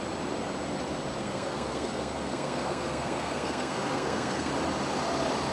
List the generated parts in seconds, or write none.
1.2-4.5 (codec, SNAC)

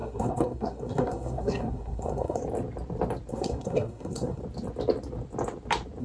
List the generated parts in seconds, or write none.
0.0-2.4 (codec, SNAC); 3.3-4.4

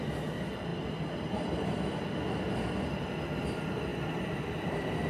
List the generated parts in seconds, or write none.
none

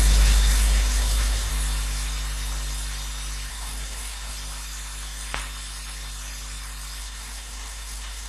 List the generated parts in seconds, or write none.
0.0-1.5 (codec, SNAC); 3.5-4.3; 7.0-8.3

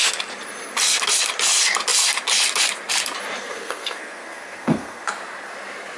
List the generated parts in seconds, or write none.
3.4-5.1 (codec, SNAC)

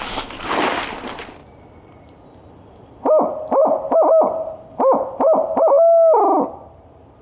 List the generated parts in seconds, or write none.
none

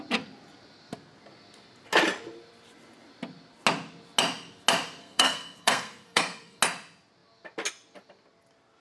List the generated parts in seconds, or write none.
5.0-6.6 (codec, SNAC)